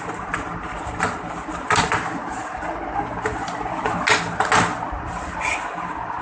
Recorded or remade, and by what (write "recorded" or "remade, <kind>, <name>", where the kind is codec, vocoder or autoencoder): recorded